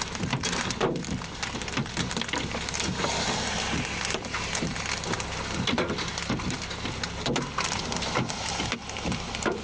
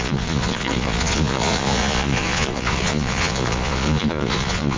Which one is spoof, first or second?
second